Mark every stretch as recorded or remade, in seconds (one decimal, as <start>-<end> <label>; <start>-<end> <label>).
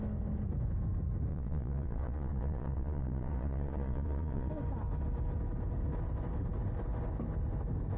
0.0-1.3 recorded; 1.3-4.5 remade; 4.5-8.0 recorded